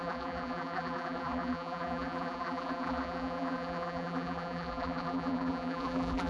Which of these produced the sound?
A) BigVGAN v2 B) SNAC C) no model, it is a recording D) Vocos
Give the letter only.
A